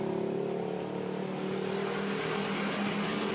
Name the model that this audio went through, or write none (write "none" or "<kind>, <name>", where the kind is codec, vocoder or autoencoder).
none